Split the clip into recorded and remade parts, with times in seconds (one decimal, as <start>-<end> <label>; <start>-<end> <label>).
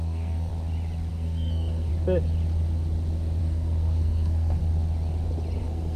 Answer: 0.0-0.5 remade; 0.5-1.1 recorded; 1.1-1.9 remade; 1.9-3.4 recorded; 3.4-4.6 remade; 4.6-5.6 recorded; 5.6-6.0 remade